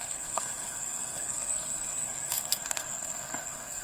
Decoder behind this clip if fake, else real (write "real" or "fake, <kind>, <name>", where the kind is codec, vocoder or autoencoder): fake, codec, SNAC